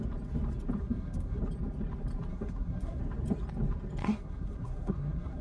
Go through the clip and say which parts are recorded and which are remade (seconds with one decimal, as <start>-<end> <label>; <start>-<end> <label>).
0.0-0.8 recorded; 0.8-1.4 remade; 1.4-2.3 recorded; 2.3-3.0 remade; 3.0-4.0 recorded; 4.0-5.4 remade